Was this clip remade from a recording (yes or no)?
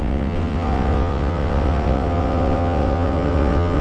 yes